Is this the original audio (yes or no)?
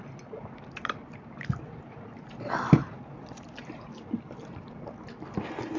yes